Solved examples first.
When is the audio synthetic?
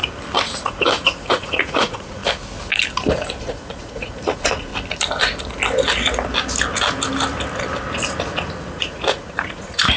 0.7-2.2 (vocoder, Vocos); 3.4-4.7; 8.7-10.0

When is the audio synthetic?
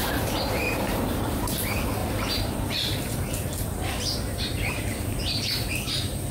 0.0-1.0 (vocoder, BigVGAN v2); 2.0-5.7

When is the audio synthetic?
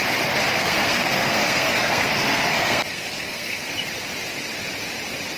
0.5-3.7 (codec, SNAC)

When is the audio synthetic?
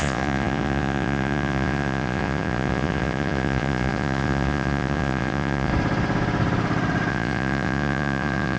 0.0-5.7 (vocoder, Vocos); 7.1-8.6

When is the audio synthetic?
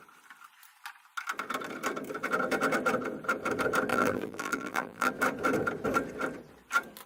3.9-5.1 (vocoder, BigVGAN v2)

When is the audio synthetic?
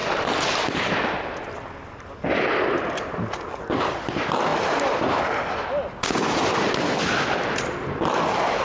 4.5-5.2 (vocoder, BigVGAN v2)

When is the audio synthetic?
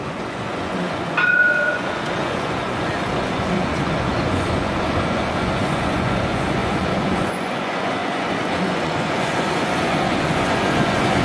0.0-11.2 (vocoder, Vocos)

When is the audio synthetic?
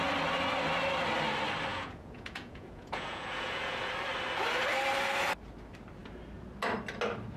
1.7-3.9 (vocoder, Vocos)